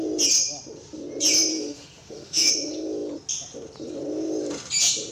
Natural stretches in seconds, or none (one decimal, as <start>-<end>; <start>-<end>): 0.0-1.5; 2.5-5.1